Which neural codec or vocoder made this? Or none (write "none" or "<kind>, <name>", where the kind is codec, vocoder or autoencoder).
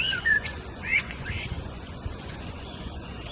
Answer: vocoder, Vocos